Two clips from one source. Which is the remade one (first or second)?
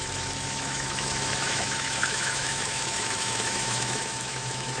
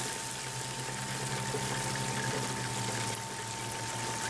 first